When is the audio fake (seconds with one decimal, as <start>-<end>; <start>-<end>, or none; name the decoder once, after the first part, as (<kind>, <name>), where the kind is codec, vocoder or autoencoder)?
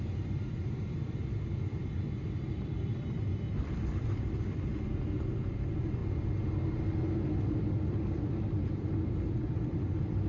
0.0-6.0 (vocoder, BigVGAN v2); 7.1-10.3